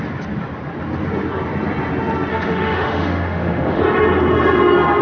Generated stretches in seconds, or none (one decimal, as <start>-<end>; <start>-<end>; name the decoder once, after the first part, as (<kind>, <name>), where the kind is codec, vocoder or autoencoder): 2.3-3.8 (autoencoder, DAC-VAE)